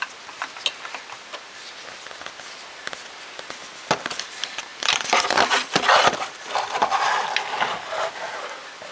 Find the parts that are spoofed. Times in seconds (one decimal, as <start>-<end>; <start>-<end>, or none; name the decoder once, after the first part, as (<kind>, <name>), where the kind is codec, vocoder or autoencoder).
4.7-6.8 (vocoder, BigVGAN v2)